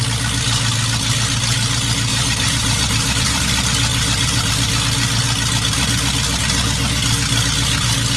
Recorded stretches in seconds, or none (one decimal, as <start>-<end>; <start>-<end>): 0.0-2.1; 3.4-3.9; 4.5-8.2